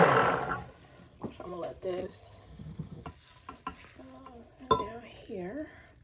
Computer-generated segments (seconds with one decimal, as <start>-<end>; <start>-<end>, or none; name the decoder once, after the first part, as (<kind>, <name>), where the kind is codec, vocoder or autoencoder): 2.0-3.1 (vocoder, HiFi-GAN)